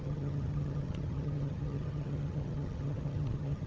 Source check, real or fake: fake